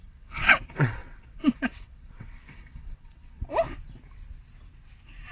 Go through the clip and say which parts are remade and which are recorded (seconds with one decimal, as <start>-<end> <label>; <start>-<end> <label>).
0.0-3.5 remade; 3.5-5.3 recorded